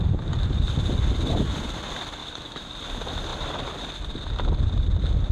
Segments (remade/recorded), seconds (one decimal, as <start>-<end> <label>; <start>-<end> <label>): 0.0-2.2 recorded; 2.2-2.7 remade; 2.7-5.3 recorded